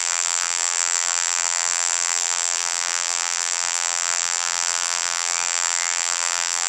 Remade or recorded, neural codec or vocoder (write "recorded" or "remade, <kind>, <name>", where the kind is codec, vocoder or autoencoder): remade, vocoder, BigVGAN v2